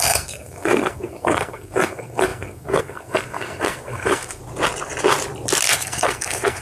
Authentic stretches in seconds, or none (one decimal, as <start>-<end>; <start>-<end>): 4.4-5.7